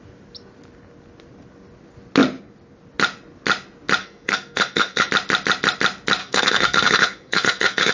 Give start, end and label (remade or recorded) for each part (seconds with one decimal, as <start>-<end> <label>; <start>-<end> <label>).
0.0-4.0 recorded; 4.0-5.1 remade; 5.1-6.2 recorded; 6.2-7.9 remade